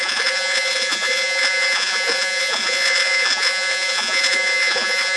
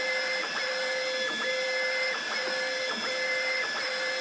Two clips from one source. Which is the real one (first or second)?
second